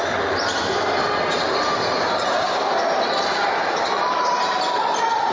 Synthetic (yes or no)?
yes